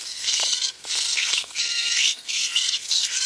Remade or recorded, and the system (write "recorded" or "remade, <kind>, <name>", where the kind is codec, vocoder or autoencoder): remade, codec, SNAC